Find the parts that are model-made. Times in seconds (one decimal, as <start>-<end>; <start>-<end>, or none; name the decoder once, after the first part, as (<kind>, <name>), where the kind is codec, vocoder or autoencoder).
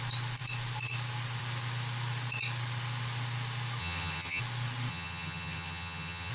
3.8-4.4 (vocoder, HiFi-GAN); 4.9-6.3